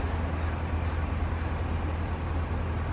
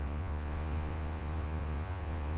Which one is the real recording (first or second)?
first